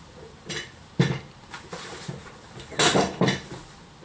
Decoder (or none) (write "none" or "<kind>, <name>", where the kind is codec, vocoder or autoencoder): none